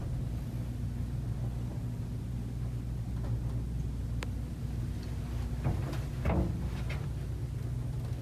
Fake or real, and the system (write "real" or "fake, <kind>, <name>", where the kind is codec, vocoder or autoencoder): real